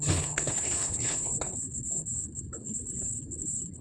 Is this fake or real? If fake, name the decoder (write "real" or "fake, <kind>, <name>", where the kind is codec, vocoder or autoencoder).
fake, codec, HILCodec